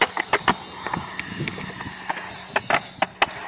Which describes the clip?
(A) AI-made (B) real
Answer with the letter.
B